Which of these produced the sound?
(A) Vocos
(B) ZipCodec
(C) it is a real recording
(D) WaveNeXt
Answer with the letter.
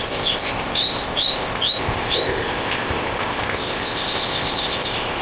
B